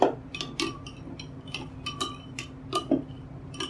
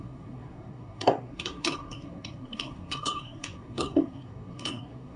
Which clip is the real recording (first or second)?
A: first